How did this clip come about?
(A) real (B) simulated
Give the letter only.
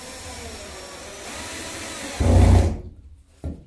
A